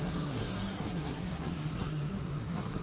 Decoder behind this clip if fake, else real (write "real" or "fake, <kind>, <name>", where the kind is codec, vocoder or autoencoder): fake, codec, SNAC